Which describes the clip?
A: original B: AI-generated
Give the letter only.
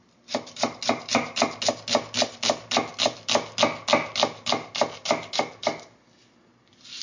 A